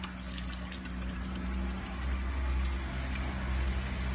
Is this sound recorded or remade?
recorded